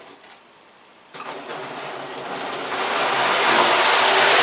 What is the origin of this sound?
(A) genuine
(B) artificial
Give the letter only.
A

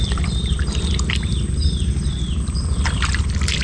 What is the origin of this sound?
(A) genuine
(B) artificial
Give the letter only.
A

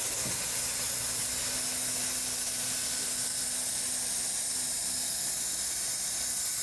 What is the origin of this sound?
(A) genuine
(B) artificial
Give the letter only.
A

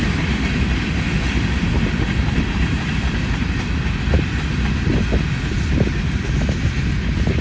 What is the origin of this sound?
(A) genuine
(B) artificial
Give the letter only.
A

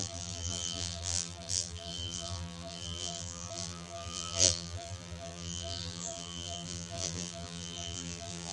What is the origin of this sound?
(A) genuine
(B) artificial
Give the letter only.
B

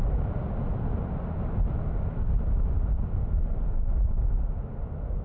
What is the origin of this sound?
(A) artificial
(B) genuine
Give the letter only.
B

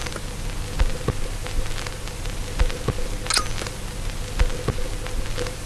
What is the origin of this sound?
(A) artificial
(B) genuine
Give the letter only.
B